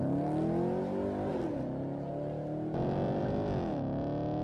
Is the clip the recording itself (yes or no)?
yes